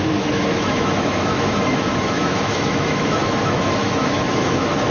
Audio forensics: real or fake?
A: fake